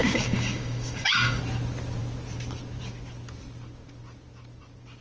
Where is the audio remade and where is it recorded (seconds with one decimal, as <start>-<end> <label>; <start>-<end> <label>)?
0.0-1.4 remade; 1.4-5.0 recorded